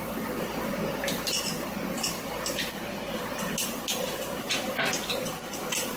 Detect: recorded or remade recorded